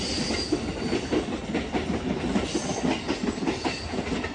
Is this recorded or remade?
recorded